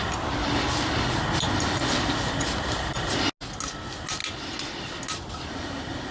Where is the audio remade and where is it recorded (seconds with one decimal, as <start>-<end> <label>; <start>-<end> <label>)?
0.0-6.1 recorded